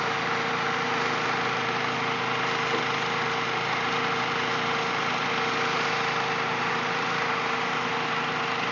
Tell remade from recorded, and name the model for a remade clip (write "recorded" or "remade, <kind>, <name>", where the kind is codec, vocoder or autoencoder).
recorded